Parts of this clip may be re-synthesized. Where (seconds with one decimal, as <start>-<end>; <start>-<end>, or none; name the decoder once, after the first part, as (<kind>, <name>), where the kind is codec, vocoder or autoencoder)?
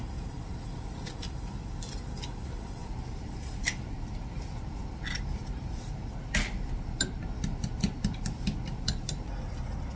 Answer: 2.8-6.7 (vocoder, BigVGAN v2)